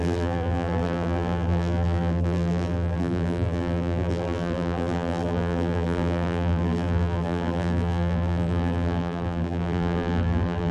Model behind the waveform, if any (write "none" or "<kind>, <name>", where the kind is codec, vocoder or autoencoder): vocoder, BigVGAN v2